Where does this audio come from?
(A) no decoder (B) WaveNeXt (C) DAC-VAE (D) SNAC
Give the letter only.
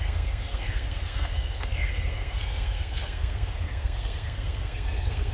D